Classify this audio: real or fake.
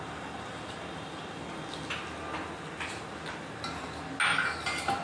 real